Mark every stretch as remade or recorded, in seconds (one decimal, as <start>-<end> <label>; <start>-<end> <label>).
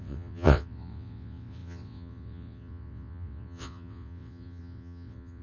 0.0-5.4 remade